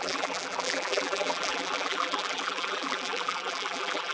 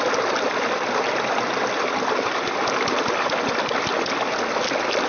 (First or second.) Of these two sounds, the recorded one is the second